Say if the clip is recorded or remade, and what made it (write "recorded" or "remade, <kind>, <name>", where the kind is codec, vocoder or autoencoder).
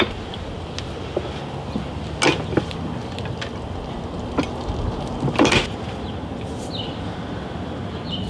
recorded